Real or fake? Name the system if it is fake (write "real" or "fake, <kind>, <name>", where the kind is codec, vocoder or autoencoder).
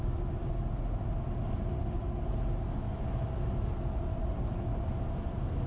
real